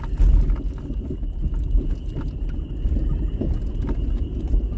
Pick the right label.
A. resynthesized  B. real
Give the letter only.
B